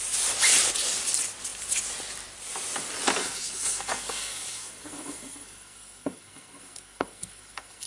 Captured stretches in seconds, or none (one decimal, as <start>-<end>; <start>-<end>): 0.0-3.2